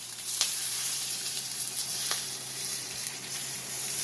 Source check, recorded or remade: remade